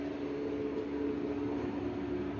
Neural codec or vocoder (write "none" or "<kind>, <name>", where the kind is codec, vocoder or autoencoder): none